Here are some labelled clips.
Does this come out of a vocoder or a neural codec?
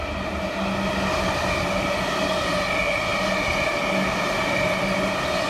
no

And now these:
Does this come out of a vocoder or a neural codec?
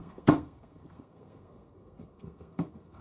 yes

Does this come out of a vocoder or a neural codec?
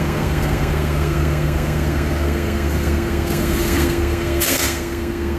yes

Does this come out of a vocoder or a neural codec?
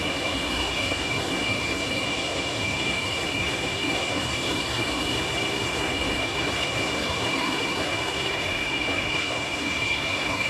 yes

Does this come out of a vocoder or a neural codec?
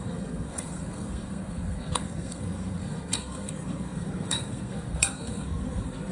yes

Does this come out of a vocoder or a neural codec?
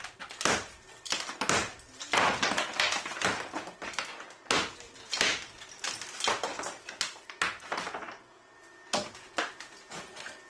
no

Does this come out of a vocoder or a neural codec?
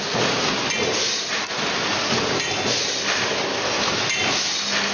no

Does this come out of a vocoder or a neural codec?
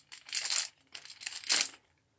no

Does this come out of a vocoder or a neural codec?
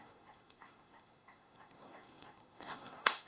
yes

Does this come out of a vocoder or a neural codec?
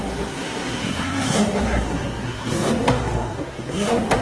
yes